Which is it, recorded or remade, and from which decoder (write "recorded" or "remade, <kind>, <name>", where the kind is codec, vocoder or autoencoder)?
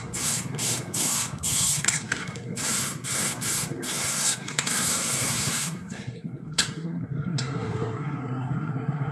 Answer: remade, codec, SNAC